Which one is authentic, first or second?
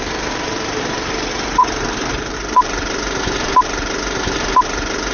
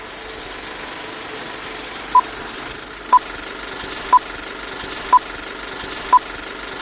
second